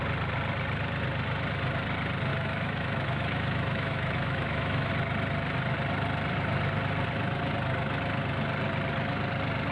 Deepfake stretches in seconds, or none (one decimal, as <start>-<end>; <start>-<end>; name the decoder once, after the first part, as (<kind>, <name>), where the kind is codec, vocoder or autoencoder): 2.3-4.9 (autoencoder, DAC-VAE)